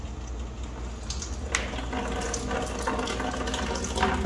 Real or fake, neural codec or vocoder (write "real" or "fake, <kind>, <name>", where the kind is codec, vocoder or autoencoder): real